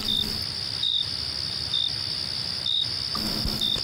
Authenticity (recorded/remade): recorded